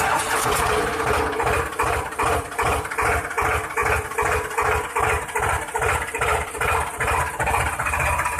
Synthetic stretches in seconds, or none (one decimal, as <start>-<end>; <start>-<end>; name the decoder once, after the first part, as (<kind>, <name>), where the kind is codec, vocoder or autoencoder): 0.0-3.8 (vocoder, BigVGAN v2); 4.9-8.4